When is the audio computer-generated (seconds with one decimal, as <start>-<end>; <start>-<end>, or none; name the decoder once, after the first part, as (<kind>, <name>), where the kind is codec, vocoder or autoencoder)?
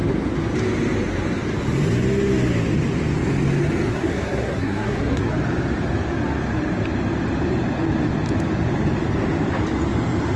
3.9-5.3 (codec, SNAC)